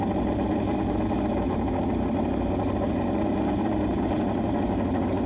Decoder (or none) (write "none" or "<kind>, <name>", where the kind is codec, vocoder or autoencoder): vocoder, BigVGAN v2